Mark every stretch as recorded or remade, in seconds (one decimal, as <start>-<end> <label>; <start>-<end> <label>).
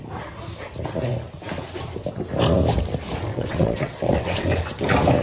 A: 0.0-3.3 recorded; 3.3-4.6 remade; 4.6-5.2 recorded